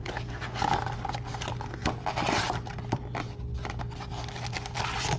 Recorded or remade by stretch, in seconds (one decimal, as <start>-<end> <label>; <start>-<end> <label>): 0.0-5.2 recorded